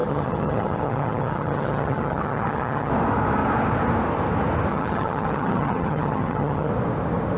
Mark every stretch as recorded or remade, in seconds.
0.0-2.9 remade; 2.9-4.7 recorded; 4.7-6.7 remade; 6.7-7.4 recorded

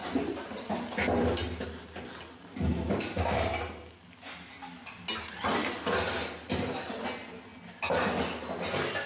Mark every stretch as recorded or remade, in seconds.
0.0-9.1 recorded